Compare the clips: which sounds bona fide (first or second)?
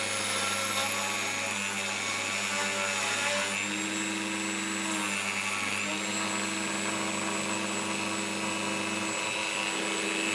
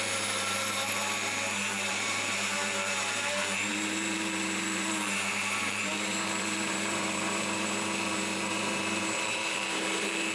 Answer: first